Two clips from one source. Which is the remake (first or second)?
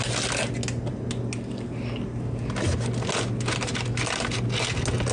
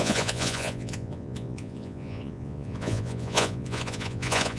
second